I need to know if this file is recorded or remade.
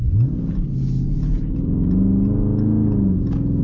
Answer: recorded